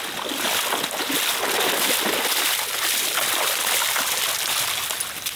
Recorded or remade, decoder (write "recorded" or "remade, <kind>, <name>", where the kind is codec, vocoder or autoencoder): recorded